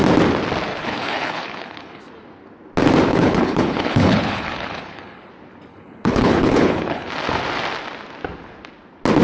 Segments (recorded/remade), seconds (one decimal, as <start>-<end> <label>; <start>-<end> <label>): 0.0-0.7 recorded; 0.7-2.0 remade; 2.0-3.1 recorded; 3.1-5.3 remade; 5.3-5.7 recorded; 5.7-7.1 remade; 7.1-9.2 recorded